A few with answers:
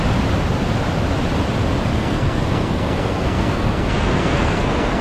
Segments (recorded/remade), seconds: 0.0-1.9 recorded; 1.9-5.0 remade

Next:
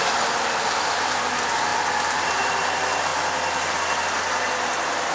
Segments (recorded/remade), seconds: 0.0-5.1 recorded